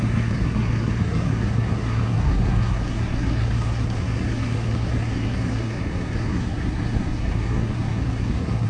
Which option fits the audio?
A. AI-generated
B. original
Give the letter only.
A